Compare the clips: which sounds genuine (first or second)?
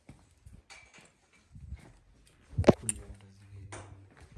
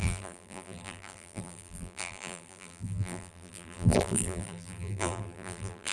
first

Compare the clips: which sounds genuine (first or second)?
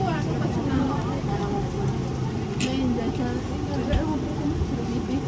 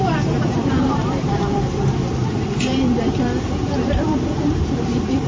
first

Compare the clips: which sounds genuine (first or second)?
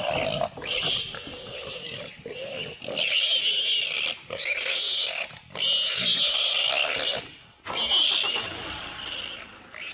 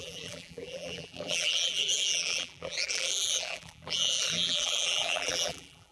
first